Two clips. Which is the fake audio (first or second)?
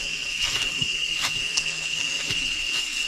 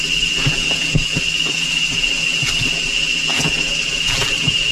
first